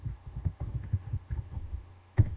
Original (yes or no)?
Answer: no